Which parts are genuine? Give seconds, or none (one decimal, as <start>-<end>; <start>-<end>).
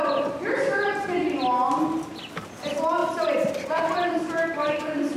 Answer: 0.0-5.2